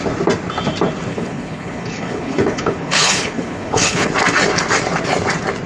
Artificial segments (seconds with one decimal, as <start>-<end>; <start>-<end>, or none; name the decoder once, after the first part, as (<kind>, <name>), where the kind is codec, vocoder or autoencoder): 1.1-4.1 (codec, HILCodec)